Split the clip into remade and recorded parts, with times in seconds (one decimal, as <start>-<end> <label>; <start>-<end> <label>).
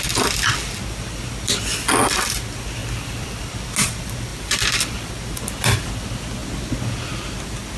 0.0-2.8 recorded; 2.8-3.5 remade; 3.5-4.3 recorded; 4.3-5.1 remade; 5.1-7.8 recorded